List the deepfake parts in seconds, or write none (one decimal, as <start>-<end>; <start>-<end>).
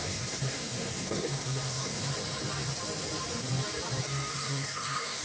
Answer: 0.0-2.1; 4.3-5.2